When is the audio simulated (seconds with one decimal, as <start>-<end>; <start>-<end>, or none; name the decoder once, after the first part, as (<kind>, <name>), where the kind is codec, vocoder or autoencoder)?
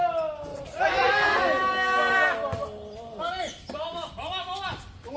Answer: 0.5-1.1 (vocoder, Vocos)